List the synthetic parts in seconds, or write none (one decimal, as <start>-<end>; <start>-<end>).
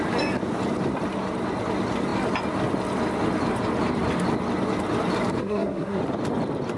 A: 5.4-6.0